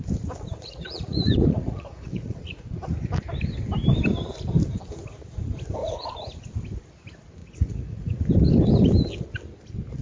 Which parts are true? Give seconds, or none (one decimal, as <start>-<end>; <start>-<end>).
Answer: 0.0-0.5; 2.8-5.8; 6.3-7.4; 8.1-10.0